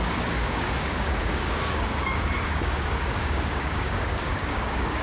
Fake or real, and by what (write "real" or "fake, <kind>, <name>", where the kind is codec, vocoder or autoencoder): fake, codec, DAC